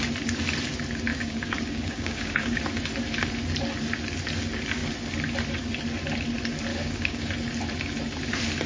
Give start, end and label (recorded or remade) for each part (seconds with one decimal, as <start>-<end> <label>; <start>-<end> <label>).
0.0-1.1 recorded; 1.1-2.6 remade; 2.6-6.7 recorded; 6.7-7.3 remade; 7.3-8.7 recorded